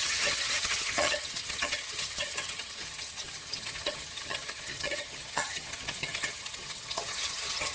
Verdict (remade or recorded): remade